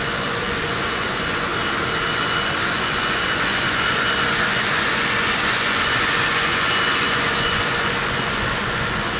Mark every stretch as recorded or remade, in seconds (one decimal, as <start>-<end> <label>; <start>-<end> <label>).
0.0-1.5 remade; 1.5-2.1 recorded; 2.1-9.2 remade